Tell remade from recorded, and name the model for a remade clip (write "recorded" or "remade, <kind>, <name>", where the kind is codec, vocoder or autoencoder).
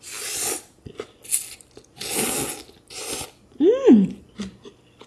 recorded